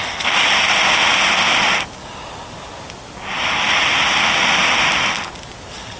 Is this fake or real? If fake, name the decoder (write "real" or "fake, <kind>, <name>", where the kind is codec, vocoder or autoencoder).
real